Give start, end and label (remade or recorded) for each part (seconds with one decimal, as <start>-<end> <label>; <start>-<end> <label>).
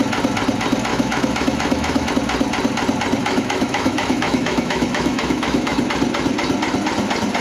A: 0.0-0.9 recorded; 0.9-2.1 remade; 2.1-3.2 recorded; 3.2-5.8 remade; 5.8-7.4 recorded